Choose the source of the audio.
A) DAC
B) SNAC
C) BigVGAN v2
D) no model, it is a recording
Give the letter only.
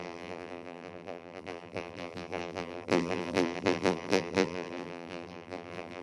C